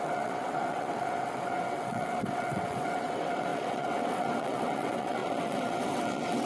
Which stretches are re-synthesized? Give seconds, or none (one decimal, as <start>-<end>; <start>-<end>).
0.0-6.5